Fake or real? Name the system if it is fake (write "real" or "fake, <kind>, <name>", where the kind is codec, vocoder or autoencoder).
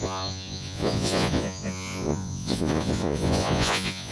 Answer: fake, vocoder, Vocos